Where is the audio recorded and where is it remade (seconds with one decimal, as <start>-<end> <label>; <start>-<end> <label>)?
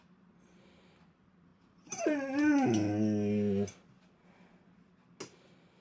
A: 0.0-5.8 recorded